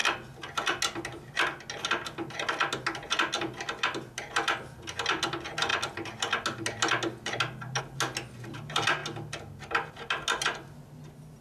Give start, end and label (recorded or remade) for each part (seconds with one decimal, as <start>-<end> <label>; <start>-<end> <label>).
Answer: 0.0-11.4 recorded